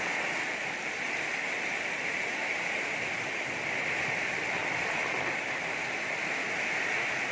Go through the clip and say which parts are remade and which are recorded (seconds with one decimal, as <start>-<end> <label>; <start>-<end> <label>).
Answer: 0.0-2.4 recorded; 2.4-3.5 remade; 3.5-4.6 recorded; 4.6-5.4 remade; 5.4-7.3 recorded